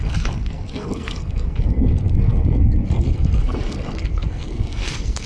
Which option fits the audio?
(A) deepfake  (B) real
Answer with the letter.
A